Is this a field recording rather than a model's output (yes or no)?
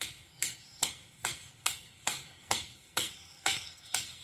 no